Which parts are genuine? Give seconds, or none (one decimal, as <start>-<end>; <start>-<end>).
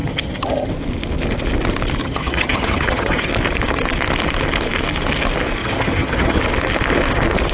0.7-2.0; 3.3-5.6; 6.4-7.5